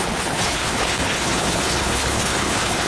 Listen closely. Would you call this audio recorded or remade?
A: remade